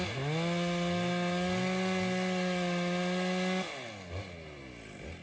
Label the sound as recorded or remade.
recorded